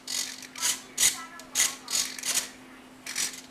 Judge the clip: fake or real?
real